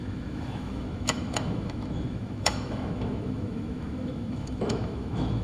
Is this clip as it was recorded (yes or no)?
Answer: no